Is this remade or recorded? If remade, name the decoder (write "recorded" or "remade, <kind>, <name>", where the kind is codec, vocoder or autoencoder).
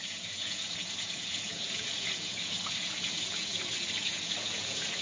remade, vocoder, Vocos